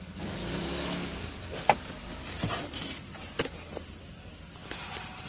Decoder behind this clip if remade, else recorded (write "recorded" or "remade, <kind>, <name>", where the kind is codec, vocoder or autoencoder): recorded